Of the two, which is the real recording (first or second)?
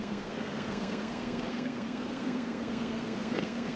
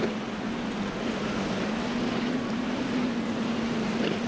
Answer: second